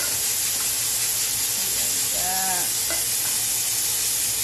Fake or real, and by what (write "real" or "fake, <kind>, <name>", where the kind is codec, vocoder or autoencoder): real